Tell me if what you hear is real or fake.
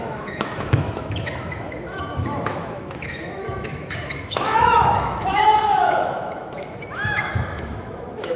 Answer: fake